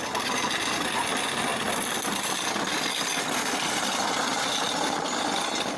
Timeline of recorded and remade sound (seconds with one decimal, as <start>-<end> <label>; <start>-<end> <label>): 0.0-5.8 recorded